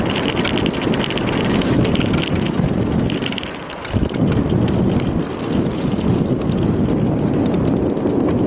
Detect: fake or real real